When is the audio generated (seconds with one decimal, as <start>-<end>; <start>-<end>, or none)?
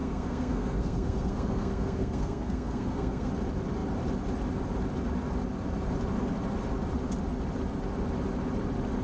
0.0-3.3